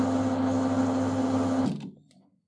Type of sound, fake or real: real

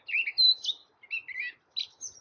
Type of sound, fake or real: real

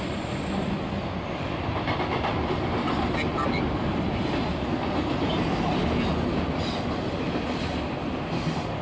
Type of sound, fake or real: real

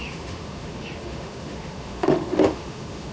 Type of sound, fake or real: fake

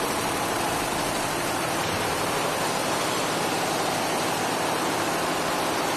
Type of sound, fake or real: real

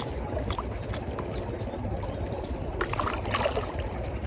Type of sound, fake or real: real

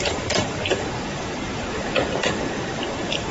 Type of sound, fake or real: fake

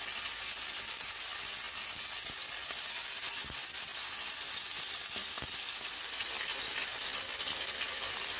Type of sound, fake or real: real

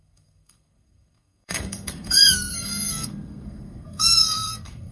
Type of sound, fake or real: fake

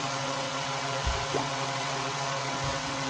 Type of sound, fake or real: fake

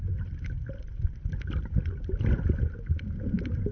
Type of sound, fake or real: real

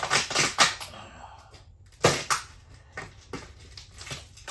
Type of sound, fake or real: real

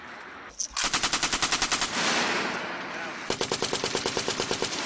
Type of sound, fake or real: real